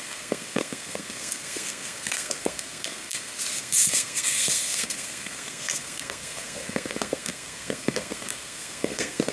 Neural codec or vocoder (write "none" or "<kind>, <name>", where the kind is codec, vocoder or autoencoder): codec, SNAC